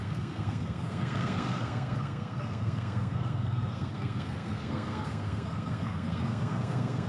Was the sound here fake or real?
fake